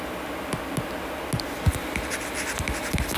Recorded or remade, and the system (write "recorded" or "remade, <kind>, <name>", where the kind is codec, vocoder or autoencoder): recorded